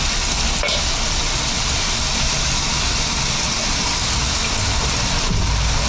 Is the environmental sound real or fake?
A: real